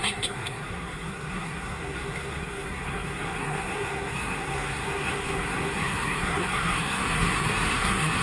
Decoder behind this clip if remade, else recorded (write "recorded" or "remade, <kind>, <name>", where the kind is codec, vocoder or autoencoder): remade, codec, SNAC